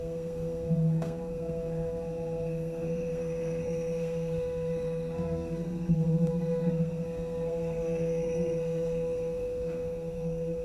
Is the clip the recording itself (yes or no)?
no